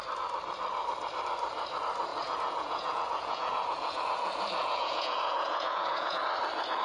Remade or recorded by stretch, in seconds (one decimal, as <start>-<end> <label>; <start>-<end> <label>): 0.0-2.1 recorded; 2.1-6.2 remade; 6.2-6.8 recorded